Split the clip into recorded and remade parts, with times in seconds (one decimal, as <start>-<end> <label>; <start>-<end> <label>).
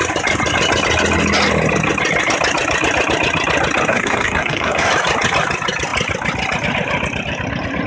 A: 0.0-3.9 recorded; 3.9-4.9 remade; 4.9-7.9 recorded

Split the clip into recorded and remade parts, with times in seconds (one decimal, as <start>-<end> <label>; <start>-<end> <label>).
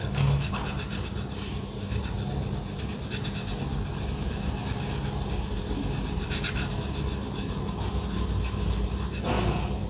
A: 0.0-0.6 remade; 0.6-9.9 recorded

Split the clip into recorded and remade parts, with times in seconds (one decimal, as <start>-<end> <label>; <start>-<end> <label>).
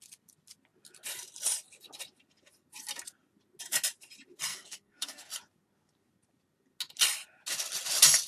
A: 0.0-4.5 recorded; 4.5-5.3 remade; 5.3-8.3 recorded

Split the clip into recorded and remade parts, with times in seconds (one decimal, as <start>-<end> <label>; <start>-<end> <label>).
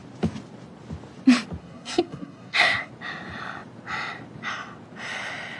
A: 0.0-1.6 recorded; 1.6-2.9 remade; 2.9-5.6 recorded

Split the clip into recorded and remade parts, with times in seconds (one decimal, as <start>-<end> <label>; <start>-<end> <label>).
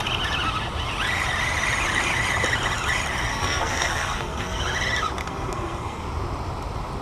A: 0.0-3.3 recorded; 3.3-4.6 remade; 4.6-5.2 recorded; 5.2-6.0 remade; 6.0-7.0 recorded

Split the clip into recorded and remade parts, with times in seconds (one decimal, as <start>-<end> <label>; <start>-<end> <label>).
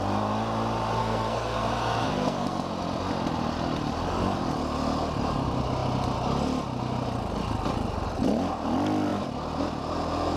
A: 0.0-1.0 recorded; 1.0-2.7 remade; 2.7-10.4 recorded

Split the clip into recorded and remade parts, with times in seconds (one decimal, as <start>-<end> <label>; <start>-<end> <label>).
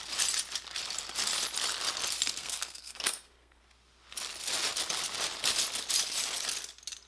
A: 0.0-2.4 recorded; 2.4-3.6 remade; 3.6-7.1 recorded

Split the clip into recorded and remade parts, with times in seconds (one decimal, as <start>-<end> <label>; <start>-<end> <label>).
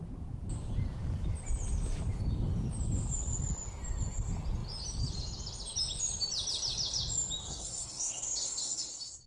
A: 0.0-7.4 recorded; 7.4-9.3 remade